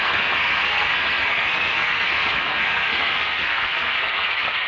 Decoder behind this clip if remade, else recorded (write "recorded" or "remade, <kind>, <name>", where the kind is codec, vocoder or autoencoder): remade, codec, SNAC